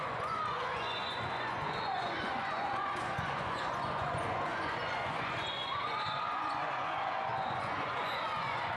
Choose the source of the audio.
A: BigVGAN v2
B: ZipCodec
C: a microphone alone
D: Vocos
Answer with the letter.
D